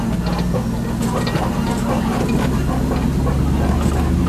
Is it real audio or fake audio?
real